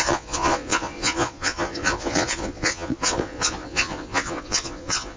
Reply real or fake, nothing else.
fake